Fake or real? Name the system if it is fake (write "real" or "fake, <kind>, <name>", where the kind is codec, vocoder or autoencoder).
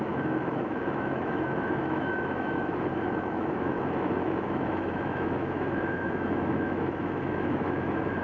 fake, autoencoder, DAC-VAE